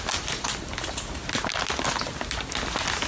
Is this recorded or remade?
recorded